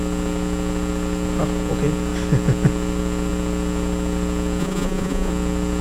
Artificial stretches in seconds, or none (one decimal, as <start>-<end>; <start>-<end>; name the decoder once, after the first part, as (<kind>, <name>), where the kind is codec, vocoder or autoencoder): 4.6-5.3 (vocoder, Vocos)